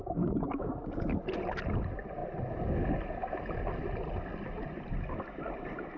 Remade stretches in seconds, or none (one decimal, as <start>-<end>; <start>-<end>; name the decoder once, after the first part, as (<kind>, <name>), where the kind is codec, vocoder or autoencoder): 0.0-0.7 (autoencoder, DAC-VAE)

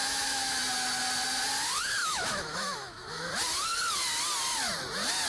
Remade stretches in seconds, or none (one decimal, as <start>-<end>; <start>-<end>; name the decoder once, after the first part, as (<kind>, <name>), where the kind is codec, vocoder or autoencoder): 0.0-0.6 (autoencoder, DAC-VAE); 2.0-3.3

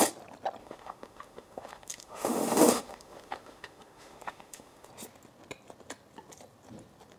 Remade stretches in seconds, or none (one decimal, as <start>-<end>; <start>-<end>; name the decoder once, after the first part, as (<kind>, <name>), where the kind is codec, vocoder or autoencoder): 0.6-4.9 (autoencoder, DAC-VAE)